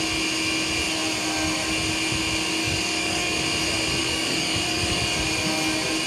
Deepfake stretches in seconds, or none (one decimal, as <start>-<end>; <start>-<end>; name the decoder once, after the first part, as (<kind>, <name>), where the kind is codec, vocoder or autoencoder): 2.6-3.4 (codec, DAC); 4.0-5.2